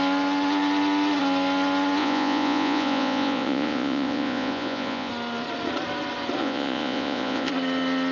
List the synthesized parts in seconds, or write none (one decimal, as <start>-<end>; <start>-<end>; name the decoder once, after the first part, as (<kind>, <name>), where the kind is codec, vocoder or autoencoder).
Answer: 2.0-5.1 (vocoder, Vocos); 6.4-7.5